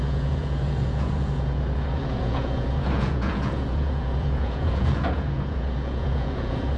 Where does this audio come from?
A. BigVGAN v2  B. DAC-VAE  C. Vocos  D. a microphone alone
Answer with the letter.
C